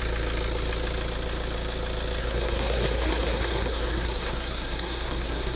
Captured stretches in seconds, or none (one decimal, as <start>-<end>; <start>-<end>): 0.0-2.2

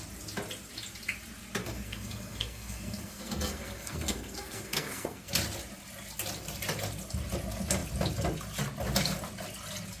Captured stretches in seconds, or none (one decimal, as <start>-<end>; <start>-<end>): 0.0-1.6; 5.3-10.0